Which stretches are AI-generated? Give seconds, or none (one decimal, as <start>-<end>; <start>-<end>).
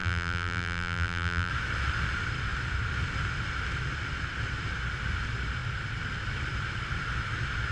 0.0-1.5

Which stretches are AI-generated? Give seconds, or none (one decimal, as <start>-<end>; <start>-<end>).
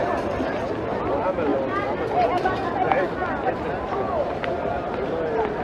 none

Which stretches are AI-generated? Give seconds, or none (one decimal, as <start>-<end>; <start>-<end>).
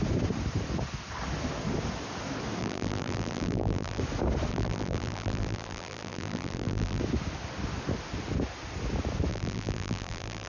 2.6-4.0; 4.5-7.0; 9.3-10.5